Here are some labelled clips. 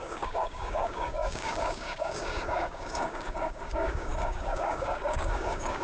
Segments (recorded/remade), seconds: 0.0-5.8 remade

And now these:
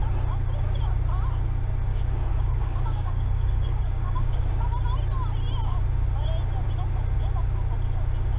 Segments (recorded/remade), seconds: 0.0-1.9 recorded; 1.9-4.5 remade; 4.5-8.4 recorded

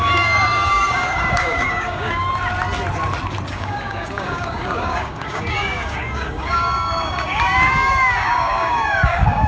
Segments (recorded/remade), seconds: 0.0-2.2 remade; 2.2-3.5 recorded; 3.5-9.5 remade

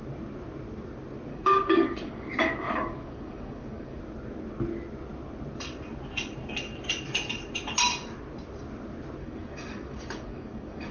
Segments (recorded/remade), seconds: 0.0-1.3 recorded; 1.3-4.0 remade; 4.0-9.2 recorded; 9.2-10.9 remade

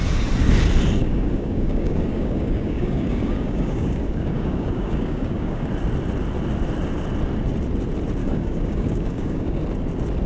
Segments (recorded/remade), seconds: 0.0-1.0 recorded; 1.0-5.7 remade; 5.7-8.2 recorded; 8.2-9.6 remade; 9.6-10.3 recorded

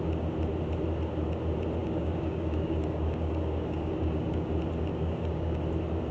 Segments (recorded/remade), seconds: 0.0-1.8 recorded; 1.8-4.5 remade; 4.5-4.9 recorded; 4.9-5.6 remade; 5.6-6.1 recorded

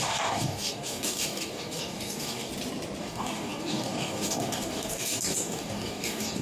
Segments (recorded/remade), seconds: 0.0-2.5 remade; 2.5-3.0 recorded; 3.0-6.4 remade